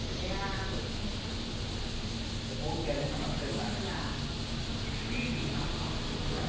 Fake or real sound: real